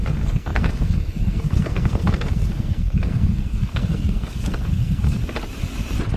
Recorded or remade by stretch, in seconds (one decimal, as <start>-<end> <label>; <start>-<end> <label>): 0.0-5.2 remade; 5.2-6.2 recorded